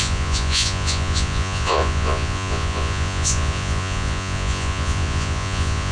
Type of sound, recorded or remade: remade